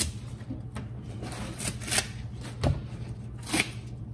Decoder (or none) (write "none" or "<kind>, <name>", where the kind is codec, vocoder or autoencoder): none